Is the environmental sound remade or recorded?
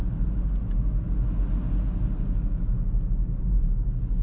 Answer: recorded